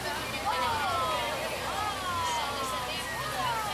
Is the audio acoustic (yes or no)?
yes